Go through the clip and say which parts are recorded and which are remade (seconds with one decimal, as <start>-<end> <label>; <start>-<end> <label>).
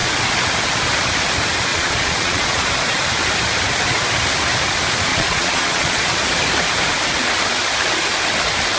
0.0-1.7 recorded; 1.7-2.7 remade; 2.7-5.1 recorded; 5.1-6.2 remade; 6.2-8.8 recorded